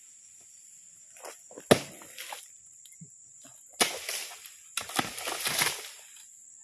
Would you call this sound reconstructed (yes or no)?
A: no